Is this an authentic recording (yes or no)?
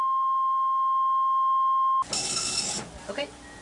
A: yes